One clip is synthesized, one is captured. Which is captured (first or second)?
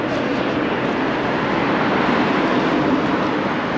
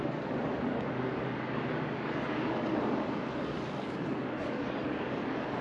first